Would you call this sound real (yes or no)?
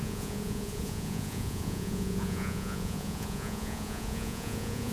no